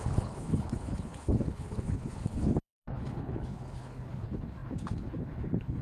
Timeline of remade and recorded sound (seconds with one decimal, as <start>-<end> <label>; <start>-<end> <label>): 0.0-5.8 remade